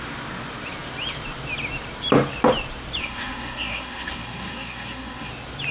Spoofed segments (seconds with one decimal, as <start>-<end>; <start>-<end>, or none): 3.0-5.3